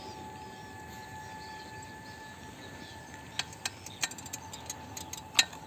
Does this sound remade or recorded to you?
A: recorded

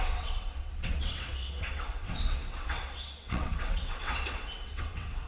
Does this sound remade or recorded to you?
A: remade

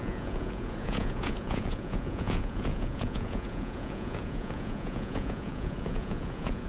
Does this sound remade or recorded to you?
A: remade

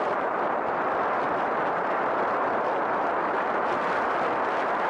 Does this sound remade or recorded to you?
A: recorded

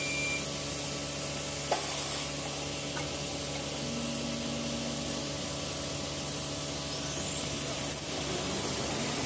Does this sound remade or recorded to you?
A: recorded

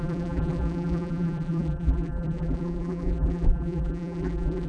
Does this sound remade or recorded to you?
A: remade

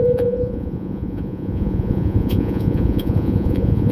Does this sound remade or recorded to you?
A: remade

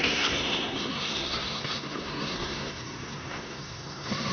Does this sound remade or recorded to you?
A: remade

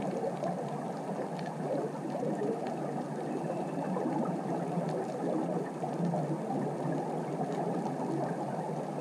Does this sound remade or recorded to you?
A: recorded